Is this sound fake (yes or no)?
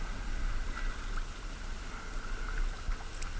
no